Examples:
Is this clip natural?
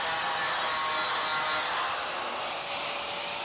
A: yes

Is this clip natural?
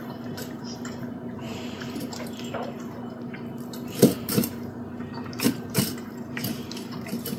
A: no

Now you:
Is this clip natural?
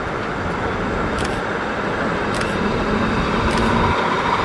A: yes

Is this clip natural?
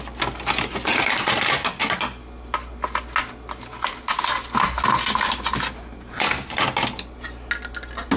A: yes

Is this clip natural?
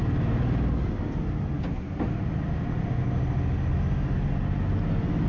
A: yes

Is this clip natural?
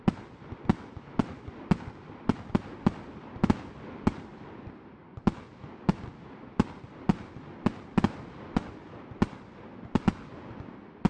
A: yes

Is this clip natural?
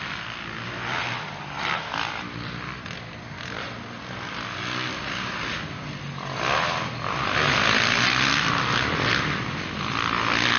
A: yes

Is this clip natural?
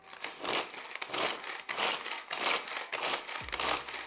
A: yes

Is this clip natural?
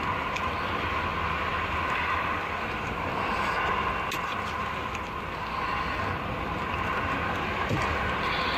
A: yes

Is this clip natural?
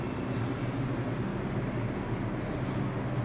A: yes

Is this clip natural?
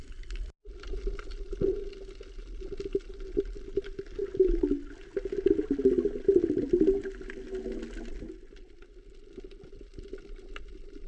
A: yes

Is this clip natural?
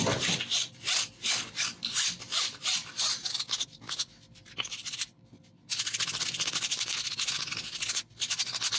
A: yes